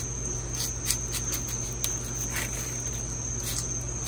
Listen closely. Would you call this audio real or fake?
real